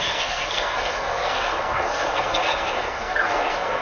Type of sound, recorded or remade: remade